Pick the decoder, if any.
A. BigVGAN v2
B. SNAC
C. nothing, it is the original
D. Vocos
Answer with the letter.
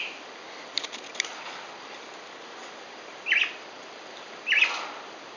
C